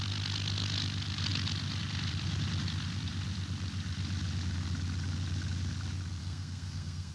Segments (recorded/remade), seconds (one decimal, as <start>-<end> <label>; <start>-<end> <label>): 0.0-6.2 recorded; 6.2-7.1 remade